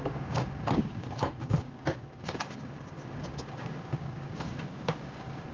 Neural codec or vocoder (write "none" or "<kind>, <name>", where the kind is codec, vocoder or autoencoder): codec, DAC